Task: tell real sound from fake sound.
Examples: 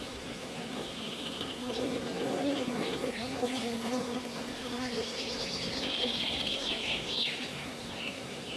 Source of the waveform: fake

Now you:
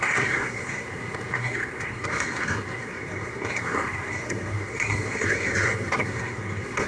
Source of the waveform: fake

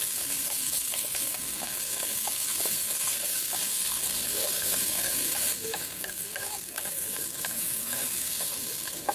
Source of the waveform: fake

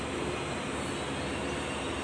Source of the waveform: real